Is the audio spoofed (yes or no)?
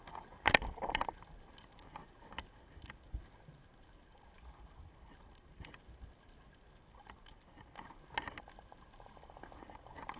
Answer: no